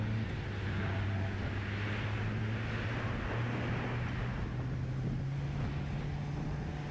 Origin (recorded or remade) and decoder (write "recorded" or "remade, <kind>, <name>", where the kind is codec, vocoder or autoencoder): recorded